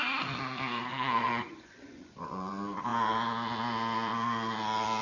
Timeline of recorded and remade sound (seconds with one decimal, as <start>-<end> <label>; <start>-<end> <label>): 0.0-0.9 recorded; 0.9-2.5 remade; 2.5-5.0 recorded